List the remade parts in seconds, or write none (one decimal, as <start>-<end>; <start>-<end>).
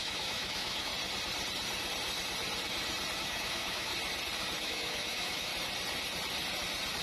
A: 0.0-0.9; 3.2-3.9; 4.6-5.5